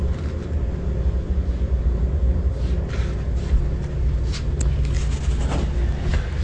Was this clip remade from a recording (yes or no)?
no